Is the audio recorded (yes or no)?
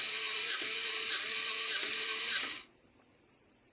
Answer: no